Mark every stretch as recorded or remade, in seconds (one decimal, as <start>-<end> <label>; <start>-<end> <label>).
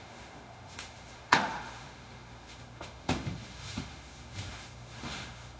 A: 0.0-5.6 remade